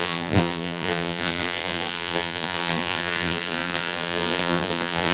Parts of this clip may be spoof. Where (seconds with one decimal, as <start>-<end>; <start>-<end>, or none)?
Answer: 0.0-5.1